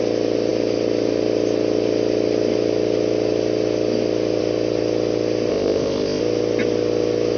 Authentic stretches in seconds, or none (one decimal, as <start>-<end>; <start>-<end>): 0.0-5.5; 6.2-7.4